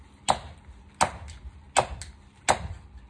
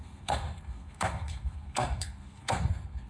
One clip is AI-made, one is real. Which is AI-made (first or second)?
second